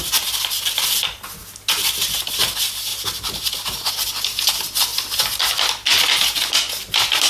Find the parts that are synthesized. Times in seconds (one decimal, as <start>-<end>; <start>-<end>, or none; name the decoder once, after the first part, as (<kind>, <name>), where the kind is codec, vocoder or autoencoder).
none